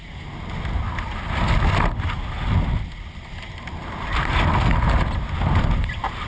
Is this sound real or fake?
real